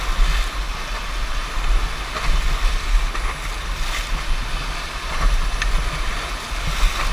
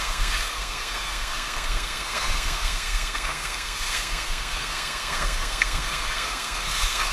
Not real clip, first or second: second